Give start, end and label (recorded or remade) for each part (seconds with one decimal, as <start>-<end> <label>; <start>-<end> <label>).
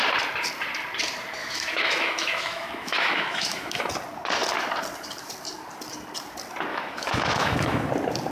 0.0-1.4 recorded; 1.4-3.9 remade; 3.9-6.7 recorded; 6.7-7.9 remade; 7.9-8.3 recorded